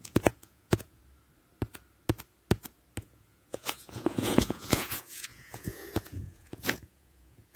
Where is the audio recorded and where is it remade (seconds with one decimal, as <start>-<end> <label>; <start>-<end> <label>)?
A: 0.0-1.0 remade; 1.0-3.0 recorded; 3.0-7.6 remade